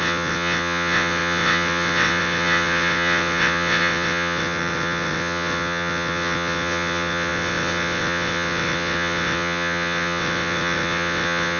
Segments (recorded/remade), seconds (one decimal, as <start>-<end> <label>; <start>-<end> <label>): 0.0-11.6 remade